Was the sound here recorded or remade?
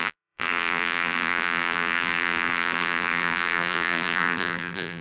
remade